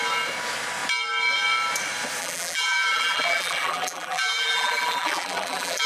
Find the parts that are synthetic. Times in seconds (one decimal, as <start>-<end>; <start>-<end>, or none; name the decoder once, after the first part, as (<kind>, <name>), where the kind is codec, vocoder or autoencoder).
2.2-5.9 (vocoder, BigVGAN v2)